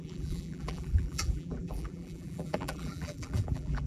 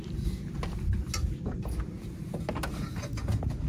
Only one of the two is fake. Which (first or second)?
first